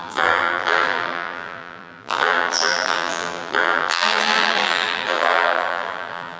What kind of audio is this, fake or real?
fake